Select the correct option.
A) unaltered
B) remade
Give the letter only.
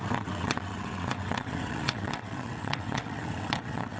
B